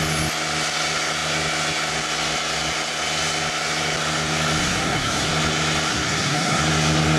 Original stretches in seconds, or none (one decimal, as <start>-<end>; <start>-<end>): 0.0-4.6; 5.3-5.9; 6.6-7.2

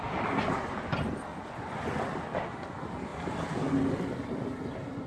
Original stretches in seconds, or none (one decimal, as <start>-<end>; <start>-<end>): 0.0-1.3; 1.8-5.1

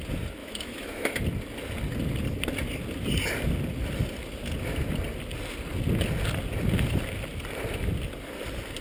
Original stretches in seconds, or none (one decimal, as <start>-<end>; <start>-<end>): 0.0-0.4; 1.2-8.8

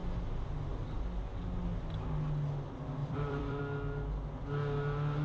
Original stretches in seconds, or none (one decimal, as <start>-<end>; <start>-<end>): 0.0-3.0; 3.6-5.2

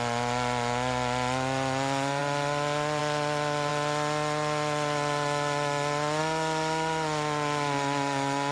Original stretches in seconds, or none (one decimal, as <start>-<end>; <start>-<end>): 0.0-8.5

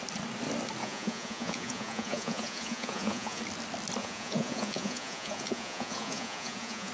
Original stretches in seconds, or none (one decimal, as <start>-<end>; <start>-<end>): 0.0-0.8; 3.4-4.0

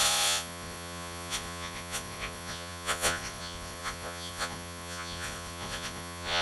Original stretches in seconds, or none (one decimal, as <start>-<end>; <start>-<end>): none